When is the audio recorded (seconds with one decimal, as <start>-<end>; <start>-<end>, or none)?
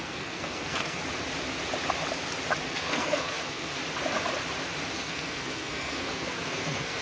1.0-2.7; 3.8-4.9